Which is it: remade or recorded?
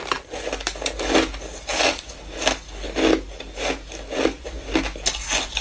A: recorded